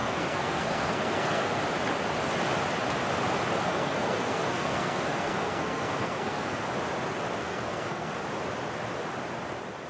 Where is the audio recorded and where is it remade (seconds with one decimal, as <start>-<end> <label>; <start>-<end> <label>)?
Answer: 0.0-1.6 remade; 1.6-3.6 recorded; 3.6-6.6 remade; 6.6-7.4 recorded; 7.4-8.1 remade; 8.1-9.9 recorded

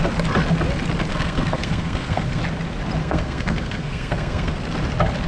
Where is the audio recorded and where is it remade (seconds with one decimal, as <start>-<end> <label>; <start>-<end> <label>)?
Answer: 0.0-1.1 recorded; 1.1-2.4 remade; 2.4-3.0 recorded; 3.0-4.6 remade; 4.6-5.3 recorded

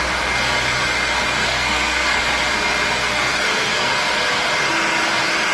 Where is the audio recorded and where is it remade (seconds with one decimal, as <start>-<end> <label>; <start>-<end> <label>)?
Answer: 0.0-1.4 recorded; 1.4-2.2 remade; 2.2-3.0 recorded; 3.0-4.1 remade; 4.1-5.5 recorded

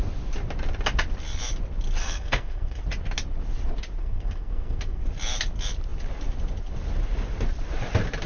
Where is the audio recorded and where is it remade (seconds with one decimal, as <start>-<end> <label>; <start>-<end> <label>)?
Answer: 0.0-2.0 recorded; 2.0-2.8 remade; 2.8-4.0 recorded; 4.0-5.0 remade; 5.0-8.3 recorded

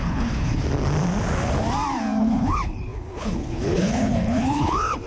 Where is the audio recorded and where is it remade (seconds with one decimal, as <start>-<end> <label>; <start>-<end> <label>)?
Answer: 0.0-0.6 remade; 0.6-2.2 recorded; 2.2-5.1 remade

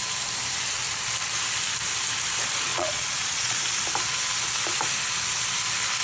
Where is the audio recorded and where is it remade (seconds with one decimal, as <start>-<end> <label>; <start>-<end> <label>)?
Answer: 0.0-2.7 recorded; 2.7-3.6 remade; 3.6-6.0 recorded

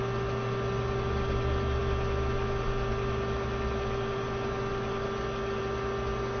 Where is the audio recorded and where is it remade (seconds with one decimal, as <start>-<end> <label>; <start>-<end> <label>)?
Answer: 0.0-6.4 recorded